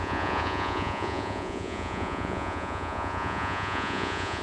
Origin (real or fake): fake